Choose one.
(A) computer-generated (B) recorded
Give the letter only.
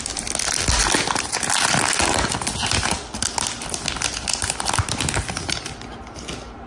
B